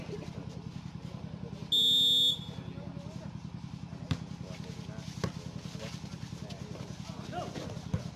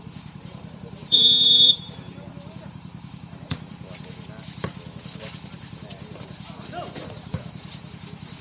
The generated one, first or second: second